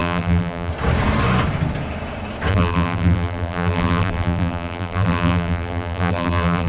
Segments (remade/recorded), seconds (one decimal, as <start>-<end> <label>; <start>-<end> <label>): 0.0-0.7 remade; 0.7-2.5 recorded; 2.5-6.7 remade